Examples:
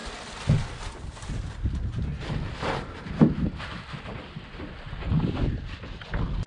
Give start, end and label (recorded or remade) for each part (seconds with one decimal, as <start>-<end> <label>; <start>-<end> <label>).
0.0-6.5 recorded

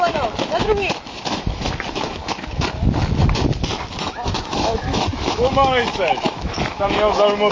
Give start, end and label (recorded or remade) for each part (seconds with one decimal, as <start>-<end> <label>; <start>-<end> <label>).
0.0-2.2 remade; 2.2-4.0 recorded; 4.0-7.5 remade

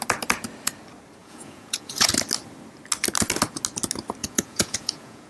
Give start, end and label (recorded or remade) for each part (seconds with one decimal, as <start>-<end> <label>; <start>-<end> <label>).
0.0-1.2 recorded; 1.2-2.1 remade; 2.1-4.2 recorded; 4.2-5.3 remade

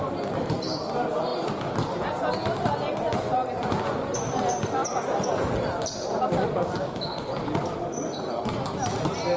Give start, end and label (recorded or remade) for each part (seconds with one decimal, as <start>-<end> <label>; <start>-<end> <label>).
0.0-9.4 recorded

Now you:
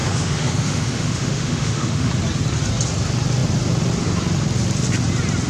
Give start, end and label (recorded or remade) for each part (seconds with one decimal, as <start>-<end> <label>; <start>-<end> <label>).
0.0-2.1 remade; 2.1-5.5 recorded